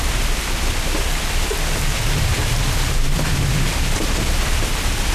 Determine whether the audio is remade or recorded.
remade